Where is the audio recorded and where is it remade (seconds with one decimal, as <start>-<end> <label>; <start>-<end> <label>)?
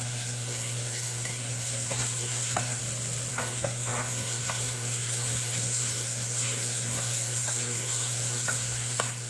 0.0-2.8 remade; 2.8-3.3 recorded; 3.3-9.3 remade